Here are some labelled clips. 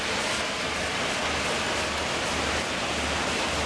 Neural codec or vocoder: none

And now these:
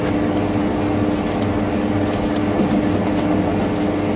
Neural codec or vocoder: none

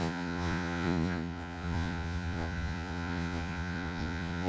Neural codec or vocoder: vocoder, Vocos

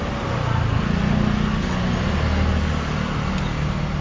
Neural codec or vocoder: none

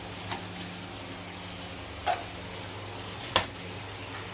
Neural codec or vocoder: none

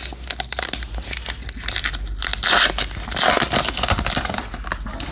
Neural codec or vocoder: none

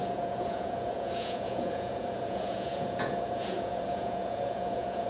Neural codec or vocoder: vocoder, Vocos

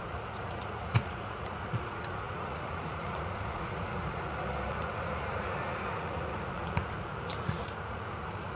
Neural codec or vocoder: vocoder, Vocos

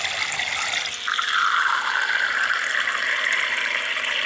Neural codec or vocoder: none